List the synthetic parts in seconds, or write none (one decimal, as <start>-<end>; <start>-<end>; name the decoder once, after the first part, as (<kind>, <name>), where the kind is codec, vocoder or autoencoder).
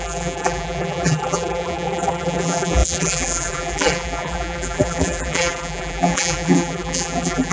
0.0-7.5 (vocoder, BigVGAN v2)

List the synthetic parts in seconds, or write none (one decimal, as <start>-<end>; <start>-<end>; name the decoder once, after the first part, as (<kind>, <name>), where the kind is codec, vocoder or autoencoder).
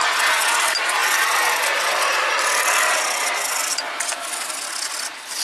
none